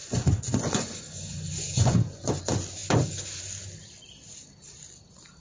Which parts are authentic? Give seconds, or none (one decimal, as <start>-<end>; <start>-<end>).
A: 2.4-5.4